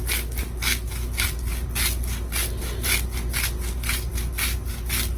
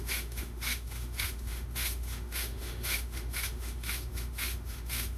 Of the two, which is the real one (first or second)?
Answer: first